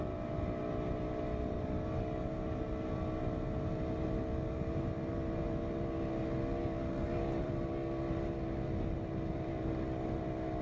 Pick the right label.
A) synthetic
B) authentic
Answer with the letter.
B